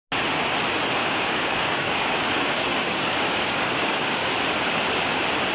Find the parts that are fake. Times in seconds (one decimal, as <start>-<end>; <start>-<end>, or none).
1.0-4.3

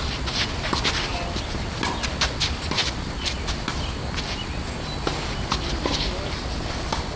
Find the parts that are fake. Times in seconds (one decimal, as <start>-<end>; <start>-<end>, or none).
none

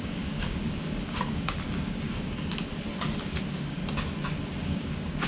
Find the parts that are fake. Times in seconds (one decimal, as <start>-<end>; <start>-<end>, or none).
0.0-2.7; 3.4-3.8; 4.6-5.3

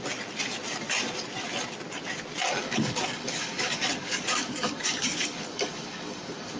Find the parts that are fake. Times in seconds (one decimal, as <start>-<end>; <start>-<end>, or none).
2.6-6.6

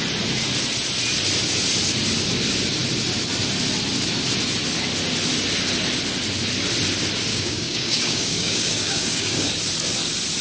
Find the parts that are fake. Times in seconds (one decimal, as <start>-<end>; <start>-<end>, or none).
7.3-9.5

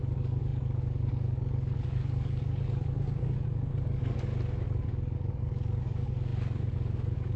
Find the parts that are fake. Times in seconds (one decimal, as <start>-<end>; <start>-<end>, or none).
0.0-4.3; 4.9-7.4